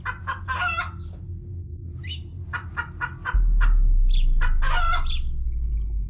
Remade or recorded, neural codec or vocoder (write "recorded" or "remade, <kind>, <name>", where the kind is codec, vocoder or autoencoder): recorded